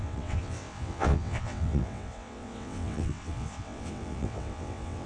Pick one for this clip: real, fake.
fake